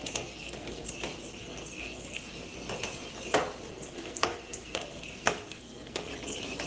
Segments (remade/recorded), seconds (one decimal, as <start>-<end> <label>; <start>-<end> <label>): 0.0-0.9 remade; 0.9-1.4 recorded; 1.4-2.2 remade; 2.2-3.7 recorded; 3.7-6.1 remade; 6.1-6.7 recorded

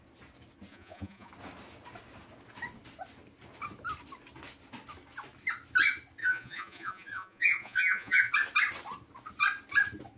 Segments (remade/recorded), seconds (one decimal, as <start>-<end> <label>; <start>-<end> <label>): 0.0-0.7 recorded; 0.7-1.3 remade; 1.3-6.2 recorded; 6.2-8.3 remade; 8.3-10.2 recorded

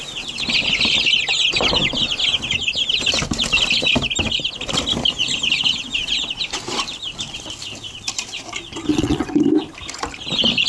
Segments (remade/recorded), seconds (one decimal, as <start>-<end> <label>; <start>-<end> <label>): 0.0-8.9 recorded; 8.9-9.4 remade; 9.4-10.7 recorded

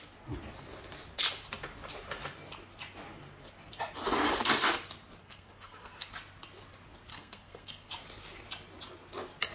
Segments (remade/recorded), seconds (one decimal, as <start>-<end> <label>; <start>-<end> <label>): 0.0-5.2 recorded; 5.2-6.1 remade; 6.1-7.1 recorded; 7.1-7.9 remade; 7.9-9.5 recorded

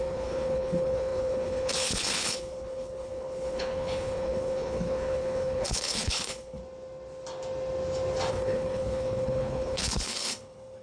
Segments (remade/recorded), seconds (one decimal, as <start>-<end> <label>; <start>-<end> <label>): 0.0-6.6 remade; 6.6-8.3 recorded; 8.3-10.8 remade

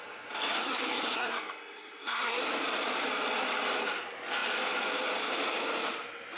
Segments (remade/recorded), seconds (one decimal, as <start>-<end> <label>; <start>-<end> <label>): 0.0-0.6 recorded; 0.6-2.4 remade; 2.4-6.4 recorded